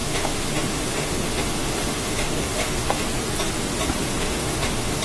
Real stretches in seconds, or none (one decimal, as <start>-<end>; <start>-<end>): 3.0-4.0